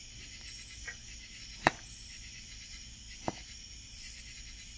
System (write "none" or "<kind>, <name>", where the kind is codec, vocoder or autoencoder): none